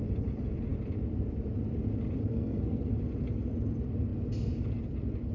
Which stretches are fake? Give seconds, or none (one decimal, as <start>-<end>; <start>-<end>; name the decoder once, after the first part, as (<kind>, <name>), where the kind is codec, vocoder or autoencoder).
2.3-2.9 (codec, SNAC)